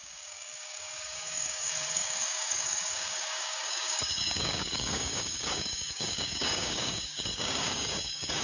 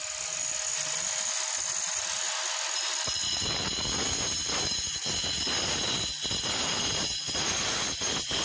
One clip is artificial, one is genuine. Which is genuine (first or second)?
second